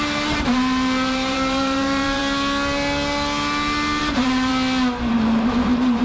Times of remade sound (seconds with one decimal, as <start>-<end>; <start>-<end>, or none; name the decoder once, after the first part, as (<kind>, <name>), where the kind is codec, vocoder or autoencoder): 0.0-2.2 (vocoder, BigVGAN v2); 4.0-4.5; 5.1-6.0